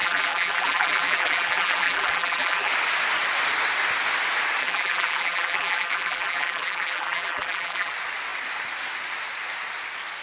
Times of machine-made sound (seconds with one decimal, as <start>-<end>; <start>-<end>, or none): 0.0-2.7; 4.6-7.9